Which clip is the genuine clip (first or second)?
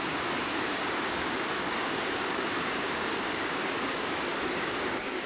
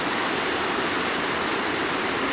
second